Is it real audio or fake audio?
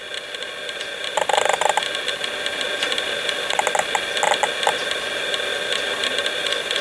real